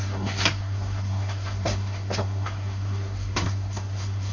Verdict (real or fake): fake